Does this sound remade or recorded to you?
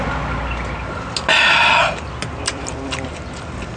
recorded